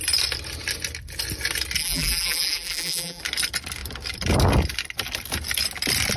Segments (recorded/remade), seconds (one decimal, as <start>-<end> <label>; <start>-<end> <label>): 0.0-1.8 recorded; 1.8-3.2 remade; 3.2-6.2 recorded

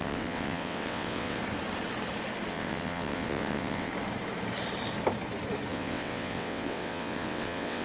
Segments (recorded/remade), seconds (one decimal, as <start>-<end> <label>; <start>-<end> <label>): 0.0-1.4 remade; 1.4-2.5 recorded; 2.5-3.9 remade; 3.9-5.7 recorded; 5.7-7.8 remade